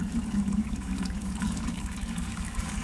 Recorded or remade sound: remade